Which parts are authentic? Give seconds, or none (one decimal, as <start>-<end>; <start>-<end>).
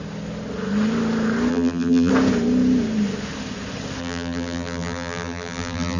0.0-1.5; 2.1-4.0